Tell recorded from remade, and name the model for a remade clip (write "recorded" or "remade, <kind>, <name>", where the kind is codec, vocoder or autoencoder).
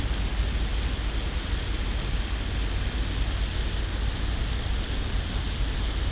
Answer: recorded